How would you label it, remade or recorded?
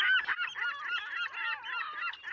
recorded